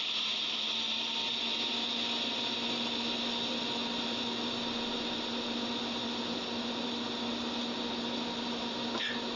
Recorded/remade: recorded